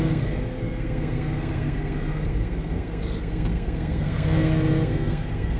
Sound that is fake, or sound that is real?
fake